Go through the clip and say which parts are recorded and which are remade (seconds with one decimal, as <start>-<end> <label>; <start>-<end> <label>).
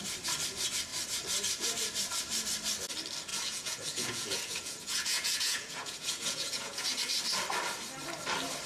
0.0-3.3 recorded; 3.3-7.0 remade; 7.0-8.7 recorded